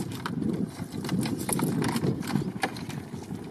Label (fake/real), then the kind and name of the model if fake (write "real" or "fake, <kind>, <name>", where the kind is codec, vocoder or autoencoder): real